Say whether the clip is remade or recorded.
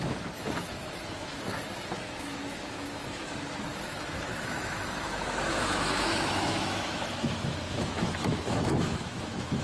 remade